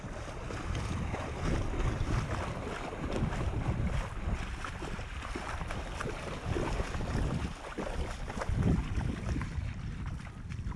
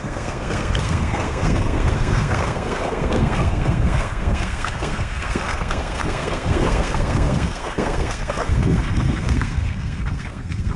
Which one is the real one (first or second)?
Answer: first